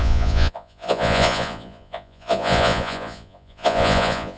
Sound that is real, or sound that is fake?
fake